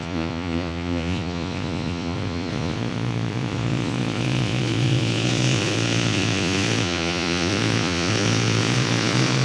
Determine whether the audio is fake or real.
fake